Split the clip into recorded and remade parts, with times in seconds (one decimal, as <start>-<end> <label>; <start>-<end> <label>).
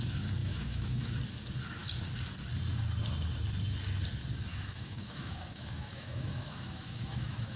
0.0-0.4 recorded; 0.4-1.1 remade; 1.1-4.5 recorded; 4.5-7.6 remade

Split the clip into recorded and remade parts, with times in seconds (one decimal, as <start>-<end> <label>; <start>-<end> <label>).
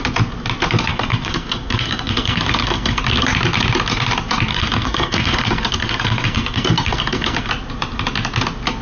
0.0-0.9 recorded; 0.9-3.0 remade; 3.0-4.5 recorded; 4.5-7.5 remade; 7.5-8.8 recorded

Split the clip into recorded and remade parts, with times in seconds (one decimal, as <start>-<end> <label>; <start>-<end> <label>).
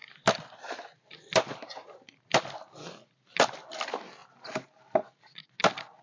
0.0-3.6 remade; 3.6-4.2 recorded; 4.2-4.8 remade; 4.8-6.0 recorded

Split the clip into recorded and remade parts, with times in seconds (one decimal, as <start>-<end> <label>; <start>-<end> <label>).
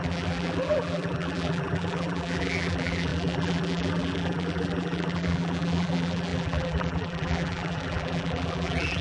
0.0-9.0 remade